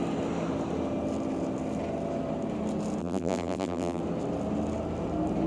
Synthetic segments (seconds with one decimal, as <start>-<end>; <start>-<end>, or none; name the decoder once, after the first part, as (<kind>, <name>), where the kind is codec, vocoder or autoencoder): 3.0-4.0 (vocoder, BigVGAN v2)